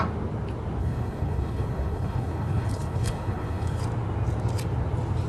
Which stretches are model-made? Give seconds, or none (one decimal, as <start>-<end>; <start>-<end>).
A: 0.8-3.8